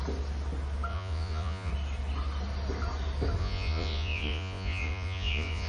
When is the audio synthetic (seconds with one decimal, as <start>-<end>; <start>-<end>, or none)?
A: 0.9-1.7; 3.4-5.7